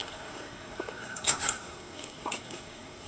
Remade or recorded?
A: remade